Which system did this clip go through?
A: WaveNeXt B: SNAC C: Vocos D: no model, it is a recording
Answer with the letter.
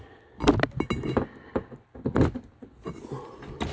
D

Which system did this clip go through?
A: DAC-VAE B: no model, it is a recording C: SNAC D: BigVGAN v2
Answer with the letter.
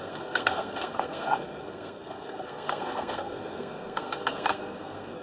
C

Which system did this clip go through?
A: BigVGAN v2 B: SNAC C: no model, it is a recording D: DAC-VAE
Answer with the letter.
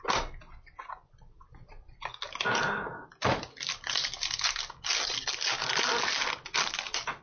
C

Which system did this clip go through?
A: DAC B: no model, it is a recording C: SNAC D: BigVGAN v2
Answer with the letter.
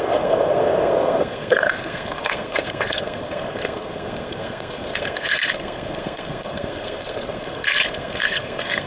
C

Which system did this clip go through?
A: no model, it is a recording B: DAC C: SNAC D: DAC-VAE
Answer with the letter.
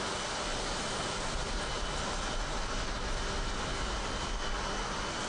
A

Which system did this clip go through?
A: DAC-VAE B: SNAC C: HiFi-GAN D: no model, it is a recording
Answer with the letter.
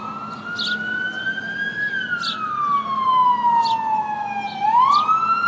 D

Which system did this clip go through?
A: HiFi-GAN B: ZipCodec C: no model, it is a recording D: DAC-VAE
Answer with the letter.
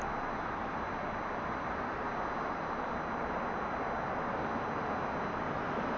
C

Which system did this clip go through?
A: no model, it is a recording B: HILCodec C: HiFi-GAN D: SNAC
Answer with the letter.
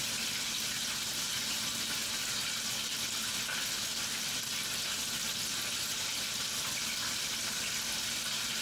A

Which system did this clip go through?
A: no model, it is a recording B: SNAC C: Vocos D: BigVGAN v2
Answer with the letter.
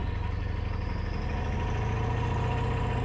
A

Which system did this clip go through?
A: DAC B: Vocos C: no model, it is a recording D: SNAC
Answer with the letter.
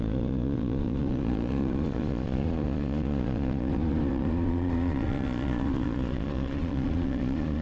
B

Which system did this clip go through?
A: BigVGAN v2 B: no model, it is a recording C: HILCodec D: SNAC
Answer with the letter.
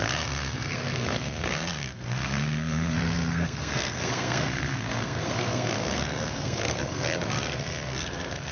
D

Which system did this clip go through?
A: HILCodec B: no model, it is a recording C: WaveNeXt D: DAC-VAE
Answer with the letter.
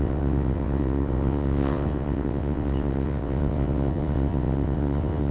C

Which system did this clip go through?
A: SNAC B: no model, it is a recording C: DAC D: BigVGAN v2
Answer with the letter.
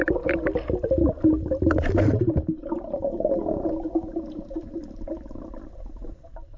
D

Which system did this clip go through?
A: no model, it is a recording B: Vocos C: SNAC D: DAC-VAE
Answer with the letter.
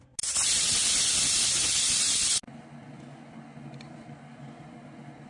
A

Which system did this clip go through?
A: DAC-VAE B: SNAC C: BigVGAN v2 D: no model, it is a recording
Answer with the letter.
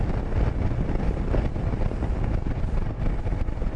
D